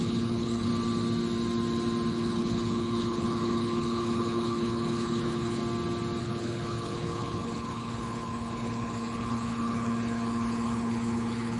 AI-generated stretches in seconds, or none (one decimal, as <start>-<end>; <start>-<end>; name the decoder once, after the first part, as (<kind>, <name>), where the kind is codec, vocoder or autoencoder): 0.0-0.7 (codec, HILCodec); 2.1-5.6; 6.2-11.6